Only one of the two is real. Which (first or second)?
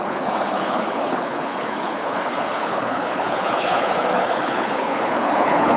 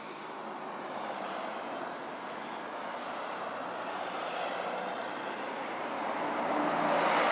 second